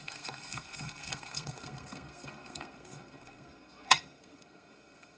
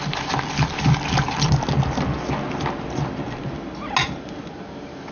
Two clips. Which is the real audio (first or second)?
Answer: second